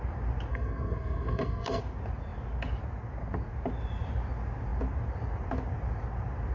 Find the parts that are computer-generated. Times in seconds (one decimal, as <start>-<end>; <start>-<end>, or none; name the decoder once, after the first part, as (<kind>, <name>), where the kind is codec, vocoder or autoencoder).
0.5-1.8 (codec, SNAC)